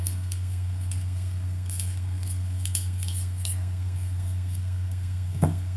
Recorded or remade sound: remade